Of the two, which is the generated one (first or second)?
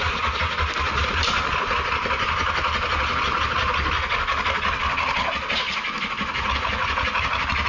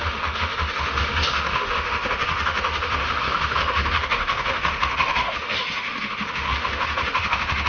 second